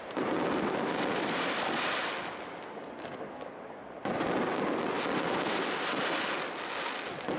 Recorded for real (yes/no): yes